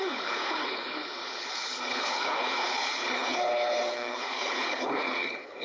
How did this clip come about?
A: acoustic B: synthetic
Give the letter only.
B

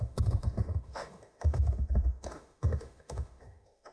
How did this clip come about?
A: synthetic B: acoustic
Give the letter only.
A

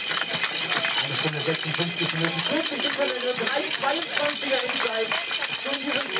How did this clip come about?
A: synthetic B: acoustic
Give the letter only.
B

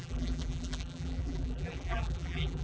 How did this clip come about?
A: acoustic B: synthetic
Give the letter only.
B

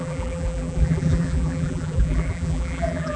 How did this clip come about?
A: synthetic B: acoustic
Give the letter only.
A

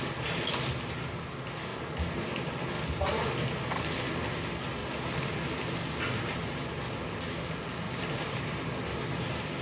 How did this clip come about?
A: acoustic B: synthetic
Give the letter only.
A